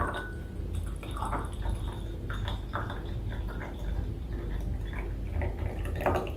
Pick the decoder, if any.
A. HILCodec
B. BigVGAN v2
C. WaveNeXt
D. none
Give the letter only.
B